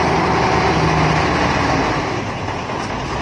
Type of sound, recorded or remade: recorded